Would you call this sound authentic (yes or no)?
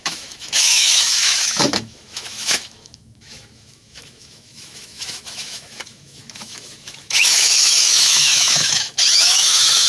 no